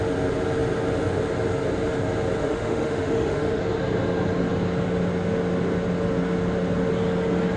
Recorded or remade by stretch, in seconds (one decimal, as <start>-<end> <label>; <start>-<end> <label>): 0.0-2.4 recorded; 2.4-3.6 remade; 3.6-7.6 recorded